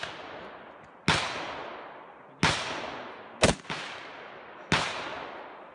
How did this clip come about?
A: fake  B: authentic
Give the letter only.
B